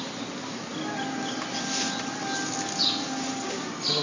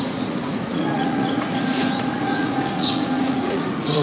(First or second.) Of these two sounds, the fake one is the second